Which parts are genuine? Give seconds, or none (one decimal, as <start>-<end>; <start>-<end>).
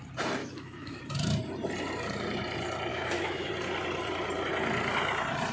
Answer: 0.0-0.4; 1.0-2.9; 3.5-5.5